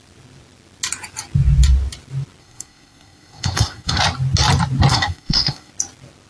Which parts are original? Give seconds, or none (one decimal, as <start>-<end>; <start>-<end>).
0.0-2.4; 4.0-4.9; 5.7-6.3